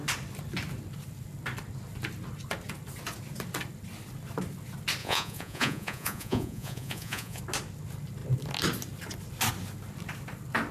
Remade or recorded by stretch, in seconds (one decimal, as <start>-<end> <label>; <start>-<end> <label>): 0.0-5.0 recorded; 5.0-7.4 remade; 7.4-10.7 recorded